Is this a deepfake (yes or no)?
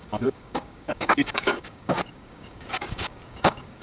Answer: yes